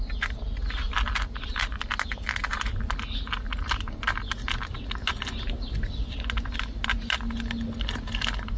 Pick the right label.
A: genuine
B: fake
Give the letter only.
A